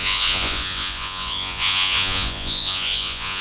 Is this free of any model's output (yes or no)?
no